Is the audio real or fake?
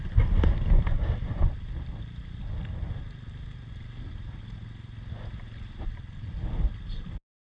real